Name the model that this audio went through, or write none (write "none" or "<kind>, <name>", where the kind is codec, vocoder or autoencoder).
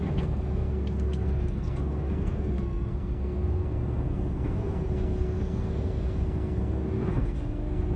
codec, SNAC